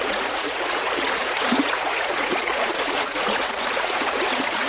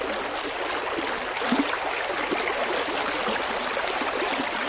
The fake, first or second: first